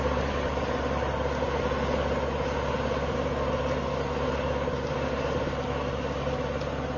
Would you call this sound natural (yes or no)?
yes